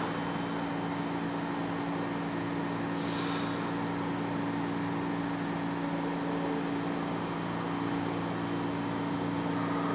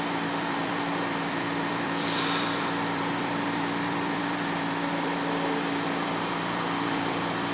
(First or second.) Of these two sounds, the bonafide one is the first